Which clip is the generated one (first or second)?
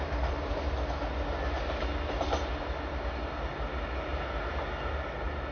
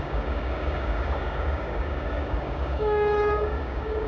second